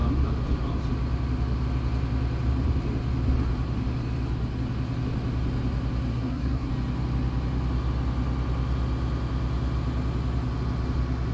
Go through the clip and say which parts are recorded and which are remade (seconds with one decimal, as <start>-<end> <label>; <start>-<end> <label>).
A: 0.0-6.1 recorded; 6.1-6.7 remade; 6.7-11.3 recorded

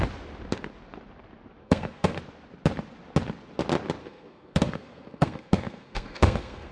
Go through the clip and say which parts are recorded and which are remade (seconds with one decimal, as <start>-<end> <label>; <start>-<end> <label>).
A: 0.0-1.6 recorded; 1.6-2.2 remade; 2.2-4.0 recorded; 4.0-6.7 remade

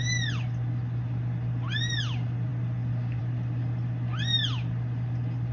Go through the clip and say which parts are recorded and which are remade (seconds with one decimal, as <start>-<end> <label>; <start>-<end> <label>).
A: 0.0-5.5 recorded

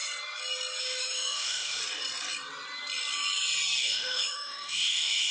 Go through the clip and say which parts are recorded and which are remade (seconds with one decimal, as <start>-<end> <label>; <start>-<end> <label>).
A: 0.0-0.8 recorded; 0.8-1.8 remade; 1.8-3.8 recorded; 3.8-5.3 remade

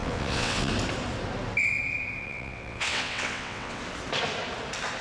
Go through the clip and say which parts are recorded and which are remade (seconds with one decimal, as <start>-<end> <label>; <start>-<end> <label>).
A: 0.0-0.7 remade; 0.7-2.2 recorded; 2.2-3.8 remade; 3.8-5.0 recorded

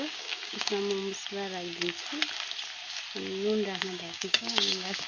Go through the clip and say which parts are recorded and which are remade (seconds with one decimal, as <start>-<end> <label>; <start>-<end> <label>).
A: 0.0-0.7 remade; 0.7-3.8 recorded; 3.8-5.1 remade

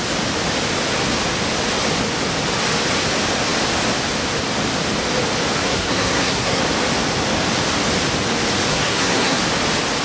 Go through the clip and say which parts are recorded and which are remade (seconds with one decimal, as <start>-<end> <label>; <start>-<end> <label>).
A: 0.0-5.6 recorded; 5.6-6.6 remade; 6.6-8.7 recorded; 8.7-9.4 remade; 9.4-10.0 recorded

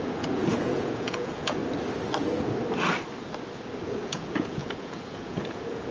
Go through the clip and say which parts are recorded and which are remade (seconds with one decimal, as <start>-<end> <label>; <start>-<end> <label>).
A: 0.0-1.6 remade; 1.6-3.9 recorded; 3.9-5.9 remade